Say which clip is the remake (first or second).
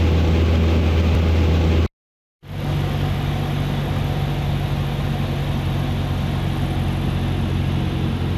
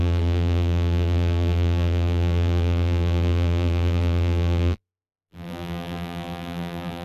second